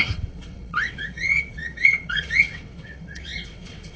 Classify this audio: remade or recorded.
remade